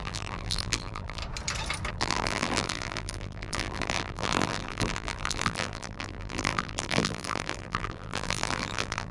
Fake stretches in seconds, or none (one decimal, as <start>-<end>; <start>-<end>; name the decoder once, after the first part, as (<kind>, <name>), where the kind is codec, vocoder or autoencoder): 0.0-1.2 (vocoder, BigVGAN v2); 1.9-9.1